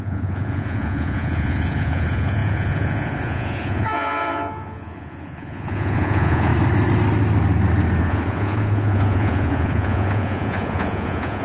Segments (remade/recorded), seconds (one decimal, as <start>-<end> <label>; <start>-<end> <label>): 0.0-6.5 remade; 6.5-8.0 recorded; 8.0-11.4 remade